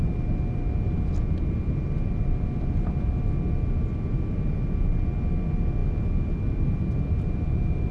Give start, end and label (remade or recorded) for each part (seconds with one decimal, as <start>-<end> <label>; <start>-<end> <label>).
0.0-7.9 recorded